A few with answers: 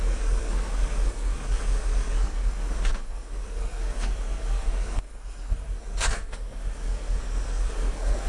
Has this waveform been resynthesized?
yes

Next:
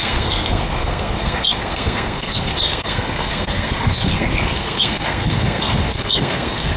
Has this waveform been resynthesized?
yes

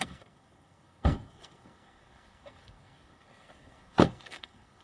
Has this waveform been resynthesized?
yes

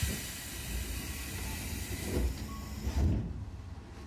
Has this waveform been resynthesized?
no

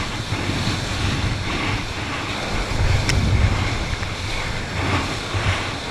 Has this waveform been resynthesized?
no